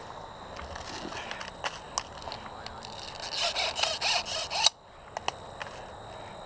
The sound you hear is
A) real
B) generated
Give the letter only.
A